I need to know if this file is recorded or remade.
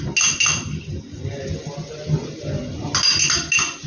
recorded